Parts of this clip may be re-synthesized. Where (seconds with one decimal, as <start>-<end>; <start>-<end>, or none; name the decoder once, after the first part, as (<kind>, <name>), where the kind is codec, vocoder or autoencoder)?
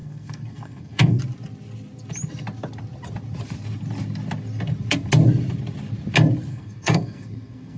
0.0-1.2 (codec, SNAC); 6.5-7.8